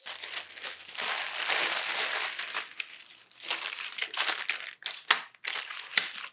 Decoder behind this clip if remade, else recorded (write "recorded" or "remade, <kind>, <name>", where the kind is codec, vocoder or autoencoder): recorded